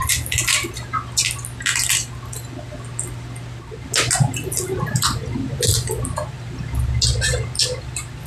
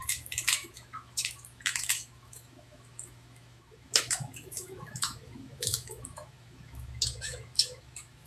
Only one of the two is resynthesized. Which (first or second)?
second